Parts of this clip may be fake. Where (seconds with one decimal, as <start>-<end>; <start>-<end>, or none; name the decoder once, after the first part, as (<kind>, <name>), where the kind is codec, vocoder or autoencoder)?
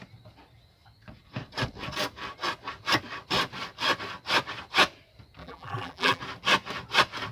5.4-6.2 (vocoder, BigVGAN v2)